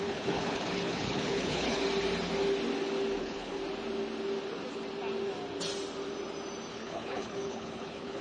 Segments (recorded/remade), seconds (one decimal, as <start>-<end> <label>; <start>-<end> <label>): 0.0-1.8 remade; 1.8-3.2 recorded; 3.2-3.6 remade; 3.6-6.7 recorded; 6.7-8.2 remade